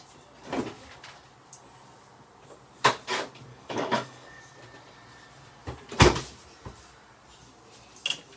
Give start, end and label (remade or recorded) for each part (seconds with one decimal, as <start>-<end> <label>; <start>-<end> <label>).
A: 0.0-3.5 recorded; 3.5-4.4 remade; 4.4-8.4 recorded